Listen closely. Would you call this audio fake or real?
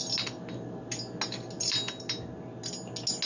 real